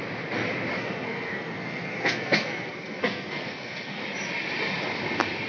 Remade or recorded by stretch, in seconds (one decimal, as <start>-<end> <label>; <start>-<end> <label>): 0.0-0.7 recorded; 0.7-4.0 remade; 4.0-5.5 recorded